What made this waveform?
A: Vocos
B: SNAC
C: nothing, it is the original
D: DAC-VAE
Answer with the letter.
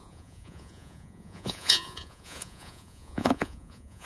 A